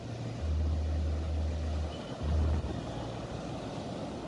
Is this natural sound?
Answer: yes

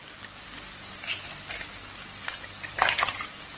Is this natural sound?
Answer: yes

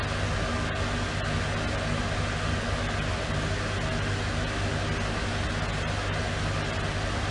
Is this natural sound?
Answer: yes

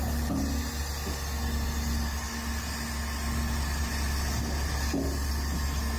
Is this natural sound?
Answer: yes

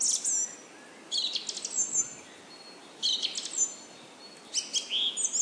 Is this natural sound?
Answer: yes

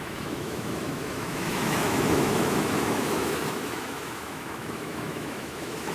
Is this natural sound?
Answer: no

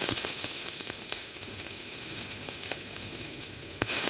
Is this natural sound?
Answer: no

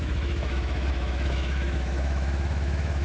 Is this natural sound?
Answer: no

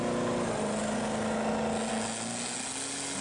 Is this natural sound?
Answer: yes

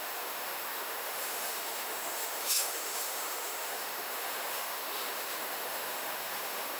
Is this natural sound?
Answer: no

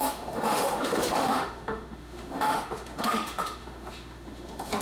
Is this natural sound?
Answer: no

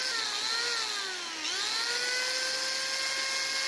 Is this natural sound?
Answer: yes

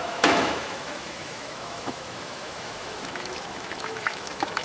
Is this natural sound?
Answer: no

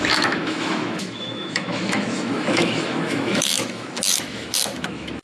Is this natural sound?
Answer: no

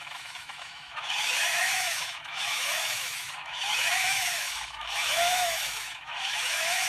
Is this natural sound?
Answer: no